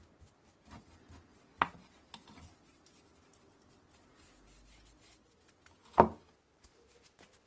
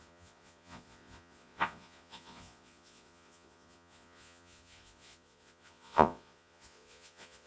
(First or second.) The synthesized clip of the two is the second